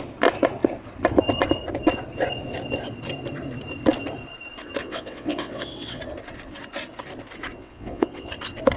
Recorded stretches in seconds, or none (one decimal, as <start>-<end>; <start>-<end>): 0.0-4.8; 6.0-7.6; 8.3-8.8